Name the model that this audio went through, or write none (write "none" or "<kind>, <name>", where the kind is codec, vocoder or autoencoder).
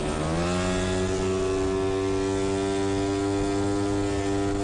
none